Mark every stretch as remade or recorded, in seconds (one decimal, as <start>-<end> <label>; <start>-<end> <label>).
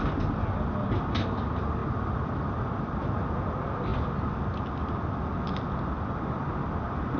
0.0-7.2 recorded